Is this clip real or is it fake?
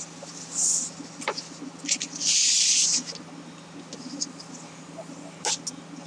real